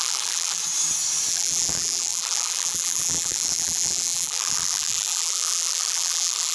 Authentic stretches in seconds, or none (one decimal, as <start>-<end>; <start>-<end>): 0.6-1.3